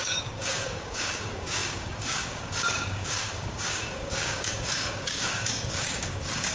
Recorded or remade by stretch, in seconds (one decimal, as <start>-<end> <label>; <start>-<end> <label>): 0.0-6.5 remade

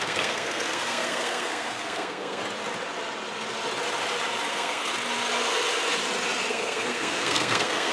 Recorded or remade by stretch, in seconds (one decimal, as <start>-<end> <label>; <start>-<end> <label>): 0.0-2.4 remade; 2.4-4.5 recorded; 4.5-4.9 remade; 4.9-6.5 recorded; 6.5-7.9 remade

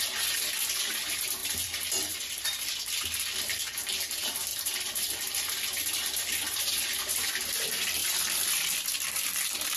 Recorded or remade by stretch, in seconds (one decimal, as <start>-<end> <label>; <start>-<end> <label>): 0.0-1.4 recorded; 1.4-2.1 remade; 2.1-4.5 recorded; 4.5-7.3 remade; 7.3-8.0 recorded; 8.0-9.1 remade; 9.1-9.8 recorded